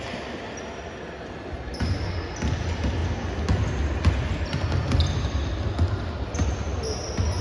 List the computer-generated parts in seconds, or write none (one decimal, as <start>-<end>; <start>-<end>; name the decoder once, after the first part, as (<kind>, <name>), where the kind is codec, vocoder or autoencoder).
none